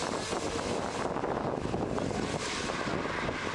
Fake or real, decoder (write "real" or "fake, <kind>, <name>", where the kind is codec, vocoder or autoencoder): real